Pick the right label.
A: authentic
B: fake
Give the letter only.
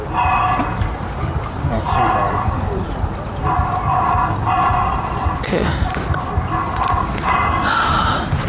A